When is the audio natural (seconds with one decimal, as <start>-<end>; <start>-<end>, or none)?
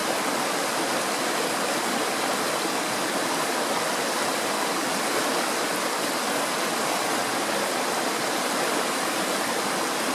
0.0-10.1